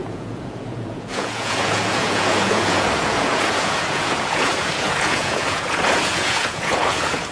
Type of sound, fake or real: fake